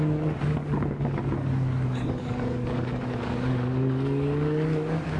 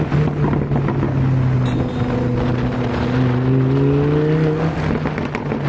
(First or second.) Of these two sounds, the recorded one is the second